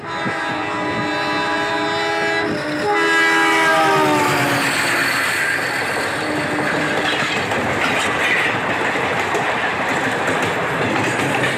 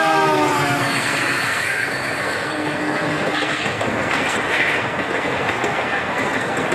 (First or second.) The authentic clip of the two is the first